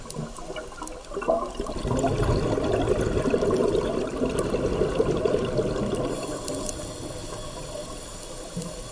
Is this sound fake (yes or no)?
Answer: no